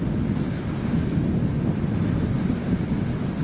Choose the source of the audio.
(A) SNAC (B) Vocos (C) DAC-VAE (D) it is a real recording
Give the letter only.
D